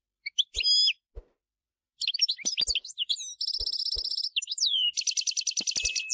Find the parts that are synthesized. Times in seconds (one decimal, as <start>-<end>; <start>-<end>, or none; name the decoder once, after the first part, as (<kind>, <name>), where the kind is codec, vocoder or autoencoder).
4.3-4.9 (autoencoder, DAC-VAE)